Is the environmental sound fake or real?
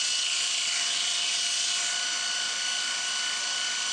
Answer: real